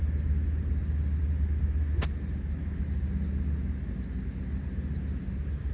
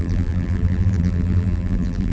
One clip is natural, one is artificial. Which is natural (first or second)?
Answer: first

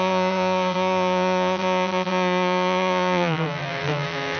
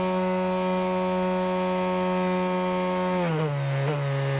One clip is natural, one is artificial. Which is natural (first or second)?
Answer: second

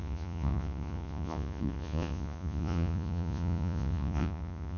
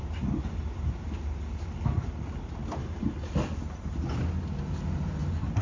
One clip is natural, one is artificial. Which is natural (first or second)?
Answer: second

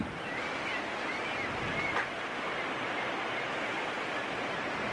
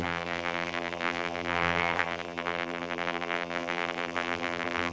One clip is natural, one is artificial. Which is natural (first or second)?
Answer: first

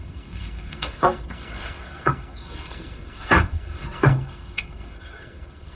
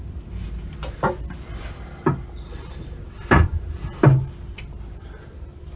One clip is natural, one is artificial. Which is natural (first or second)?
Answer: second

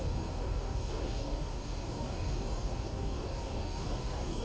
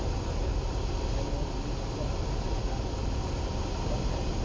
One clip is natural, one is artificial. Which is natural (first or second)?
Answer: second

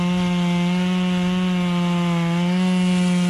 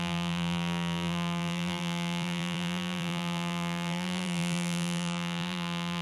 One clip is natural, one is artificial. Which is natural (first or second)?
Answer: first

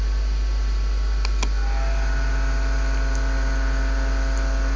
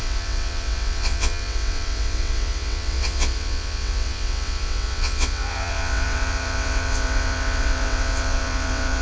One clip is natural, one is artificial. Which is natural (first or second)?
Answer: first